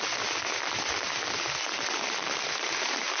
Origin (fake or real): real